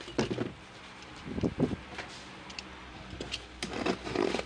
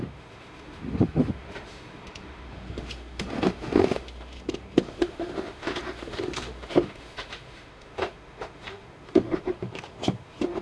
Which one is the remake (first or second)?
second